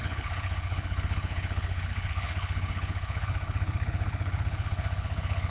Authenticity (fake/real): fake